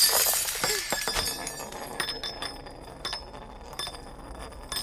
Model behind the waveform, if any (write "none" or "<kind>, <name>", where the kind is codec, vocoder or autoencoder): none